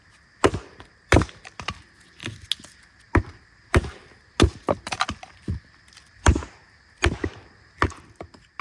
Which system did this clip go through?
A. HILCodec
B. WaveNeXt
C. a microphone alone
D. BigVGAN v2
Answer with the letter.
C